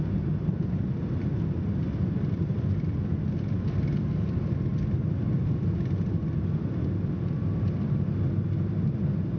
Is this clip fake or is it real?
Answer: real